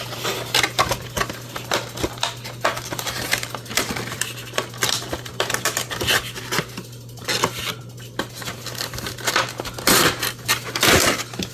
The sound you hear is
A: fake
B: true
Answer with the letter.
B